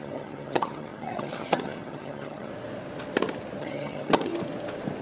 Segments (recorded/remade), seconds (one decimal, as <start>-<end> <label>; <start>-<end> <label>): 0.0-2.5 remade; 2.5-3.6 recorded; 3.6-4.3 remade; 4.3-5.0 recorded